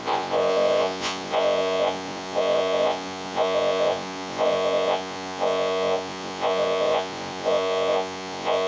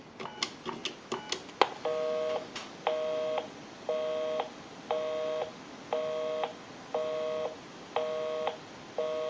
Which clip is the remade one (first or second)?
first